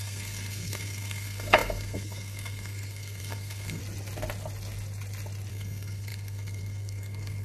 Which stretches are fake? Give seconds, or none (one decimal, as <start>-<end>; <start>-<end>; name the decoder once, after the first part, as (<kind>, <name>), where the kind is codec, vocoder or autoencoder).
0.0-3.8 (codec, SNAC); 5.5-7.4